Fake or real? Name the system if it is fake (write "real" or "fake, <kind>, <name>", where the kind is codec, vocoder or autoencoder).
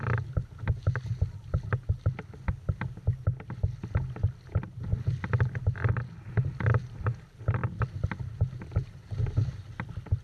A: real